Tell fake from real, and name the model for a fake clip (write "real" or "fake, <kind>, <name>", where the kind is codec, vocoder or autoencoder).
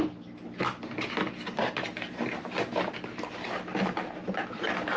real